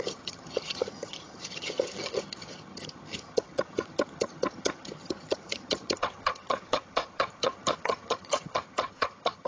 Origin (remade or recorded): remade